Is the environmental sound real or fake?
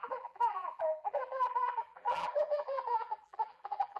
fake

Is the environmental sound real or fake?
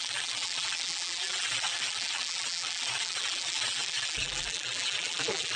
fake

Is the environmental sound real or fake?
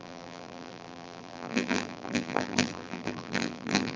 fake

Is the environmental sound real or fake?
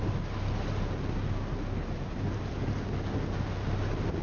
real